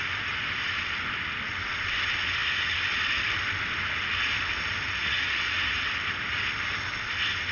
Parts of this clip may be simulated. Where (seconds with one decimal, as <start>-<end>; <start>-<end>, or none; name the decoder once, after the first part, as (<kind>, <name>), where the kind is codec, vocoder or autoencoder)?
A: none